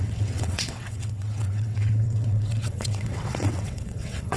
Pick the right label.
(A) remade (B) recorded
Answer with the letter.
A